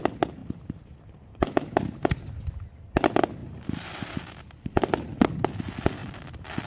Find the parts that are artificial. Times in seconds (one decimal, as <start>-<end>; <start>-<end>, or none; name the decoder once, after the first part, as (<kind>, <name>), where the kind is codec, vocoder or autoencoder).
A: 0.4-2.5 (vocoder, BigVGAN v2); 3.4-3.9